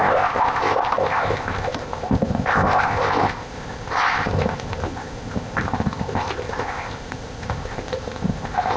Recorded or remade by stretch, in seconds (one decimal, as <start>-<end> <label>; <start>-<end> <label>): 0.0-8.8 remade